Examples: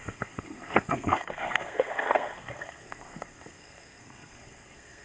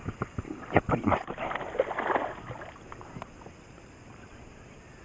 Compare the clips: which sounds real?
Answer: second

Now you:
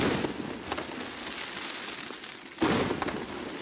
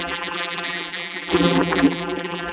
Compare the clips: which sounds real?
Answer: first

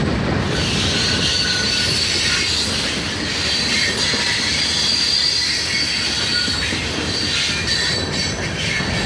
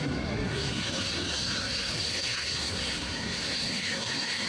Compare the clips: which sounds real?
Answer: first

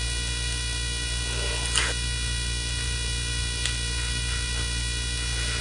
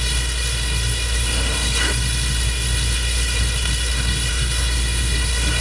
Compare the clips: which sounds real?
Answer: first